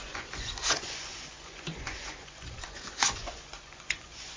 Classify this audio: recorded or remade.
remade